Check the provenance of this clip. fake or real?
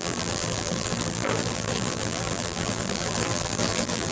fake